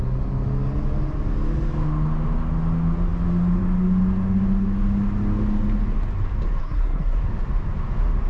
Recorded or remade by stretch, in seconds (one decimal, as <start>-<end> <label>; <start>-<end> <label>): 0.0-6.6 recorded; 6.6-7.2 remade; 7.2-8.3 recorded